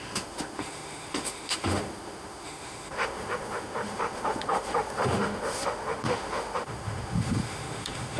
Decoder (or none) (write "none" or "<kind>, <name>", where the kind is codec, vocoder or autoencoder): autoencoder, DAC-VAE